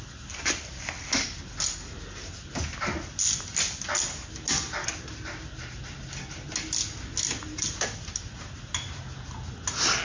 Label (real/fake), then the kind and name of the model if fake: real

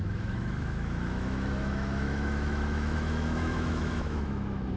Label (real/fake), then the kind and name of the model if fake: fake, autoencoder, DAC-VAE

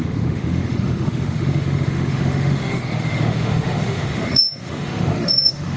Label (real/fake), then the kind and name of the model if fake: fake, autoencoder, DAC-VAE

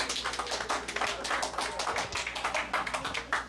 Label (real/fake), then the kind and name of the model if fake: real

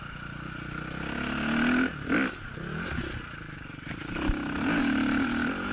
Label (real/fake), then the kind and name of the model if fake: real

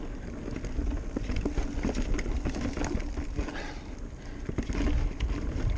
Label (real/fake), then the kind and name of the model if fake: real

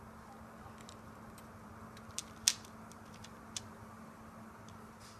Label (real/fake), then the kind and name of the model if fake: real